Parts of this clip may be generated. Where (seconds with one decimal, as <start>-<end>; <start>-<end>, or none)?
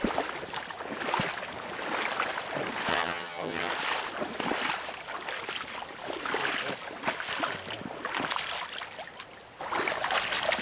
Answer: 2.9-3.7